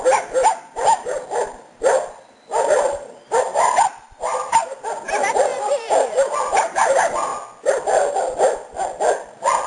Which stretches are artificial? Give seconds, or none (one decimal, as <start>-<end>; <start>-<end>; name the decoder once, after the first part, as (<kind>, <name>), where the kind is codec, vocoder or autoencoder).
0.0-7.3 (vocoder, BigVGAN v2); 8.1-8.8

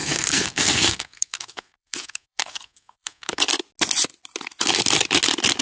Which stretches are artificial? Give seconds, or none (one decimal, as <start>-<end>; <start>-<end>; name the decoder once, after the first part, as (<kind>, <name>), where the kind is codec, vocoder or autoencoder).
0.0-3.4 (codec, SNAC)

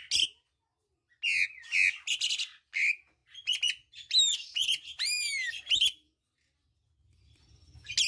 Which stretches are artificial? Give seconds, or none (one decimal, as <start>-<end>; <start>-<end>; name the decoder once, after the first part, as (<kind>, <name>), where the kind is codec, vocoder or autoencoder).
4.6-5.6 (vocoder, BigVGAN v2)

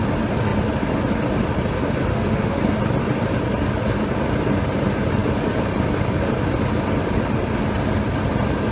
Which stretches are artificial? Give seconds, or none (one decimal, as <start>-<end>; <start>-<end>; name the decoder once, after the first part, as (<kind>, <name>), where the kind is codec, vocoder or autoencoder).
2.1-2.6 (autoencoder, DAC-VAE)

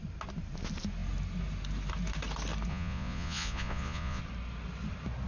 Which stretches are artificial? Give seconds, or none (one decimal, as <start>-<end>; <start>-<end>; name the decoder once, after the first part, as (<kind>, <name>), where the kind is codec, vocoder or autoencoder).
2.7-4.2 (vocoder, Vocos)

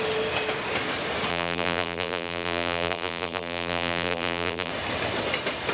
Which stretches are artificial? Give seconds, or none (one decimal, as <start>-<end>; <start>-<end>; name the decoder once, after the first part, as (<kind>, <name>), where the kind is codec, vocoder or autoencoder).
1.3-4.7 (vocoder, BigVGAN v2)

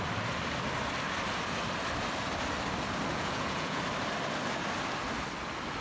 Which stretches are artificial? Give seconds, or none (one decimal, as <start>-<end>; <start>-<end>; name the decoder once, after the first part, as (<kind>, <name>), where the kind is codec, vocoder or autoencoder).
3.1-3.8 (vocoder, Vocos)